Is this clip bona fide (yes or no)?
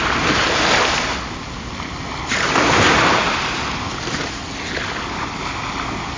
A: yes